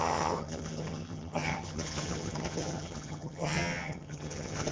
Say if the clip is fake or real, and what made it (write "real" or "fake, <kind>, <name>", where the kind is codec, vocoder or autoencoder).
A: fake, vocoder, HiFi-GAN